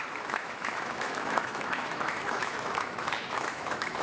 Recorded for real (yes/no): no